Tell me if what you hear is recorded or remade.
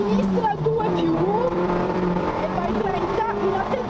remade